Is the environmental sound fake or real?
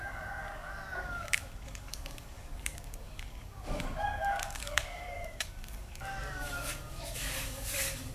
fake